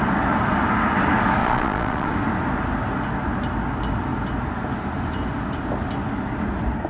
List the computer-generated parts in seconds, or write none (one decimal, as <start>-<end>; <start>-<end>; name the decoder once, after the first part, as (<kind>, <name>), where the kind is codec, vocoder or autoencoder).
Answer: 1.4-2.1 (vocoder, Vocos)